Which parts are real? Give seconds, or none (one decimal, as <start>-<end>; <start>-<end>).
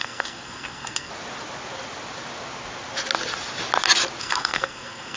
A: 1.1-4.2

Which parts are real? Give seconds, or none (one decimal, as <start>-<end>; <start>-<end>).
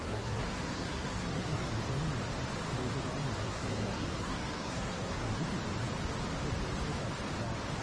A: 1.7-3.4; 5.3-7.8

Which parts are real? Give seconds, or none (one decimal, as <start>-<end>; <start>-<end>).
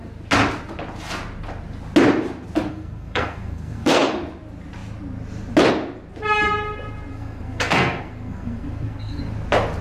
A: 0.0-2.7; 4.1-7.1; 9.2-9.8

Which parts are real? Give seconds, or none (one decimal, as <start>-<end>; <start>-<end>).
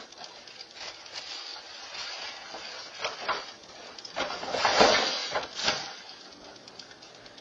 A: 0.0-7.4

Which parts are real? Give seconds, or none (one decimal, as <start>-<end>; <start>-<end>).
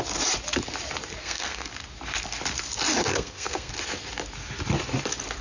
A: 0.0-1.2; 1.7-3.0; 3.7-5.4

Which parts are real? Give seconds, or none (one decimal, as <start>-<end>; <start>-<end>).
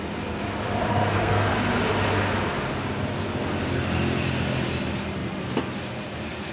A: 0.0-0.9; 1.5-6.5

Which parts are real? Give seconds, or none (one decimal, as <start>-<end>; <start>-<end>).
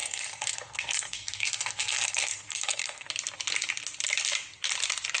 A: 3.1-5.2